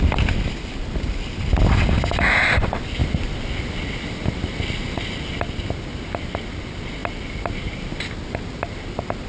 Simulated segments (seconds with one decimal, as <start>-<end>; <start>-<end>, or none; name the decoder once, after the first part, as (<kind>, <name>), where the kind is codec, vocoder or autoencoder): none